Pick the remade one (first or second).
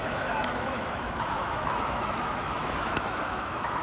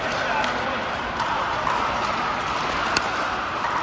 first